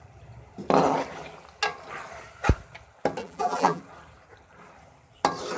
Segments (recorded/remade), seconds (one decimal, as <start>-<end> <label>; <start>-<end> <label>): 0.0-3.2 recorded; 3.2-3.8 remade; 3.8-5.6 recorded